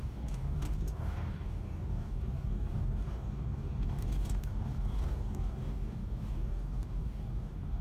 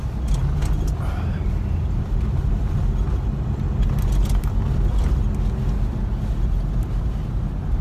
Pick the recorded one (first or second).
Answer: second